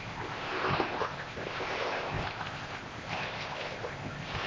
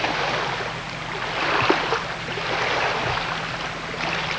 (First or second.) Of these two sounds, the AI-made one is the first